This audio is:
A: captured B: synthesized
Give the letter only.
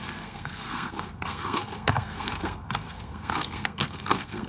B